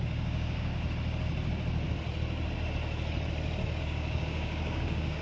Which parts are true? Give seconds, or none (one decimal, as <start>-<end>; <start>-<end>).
0.7-3.8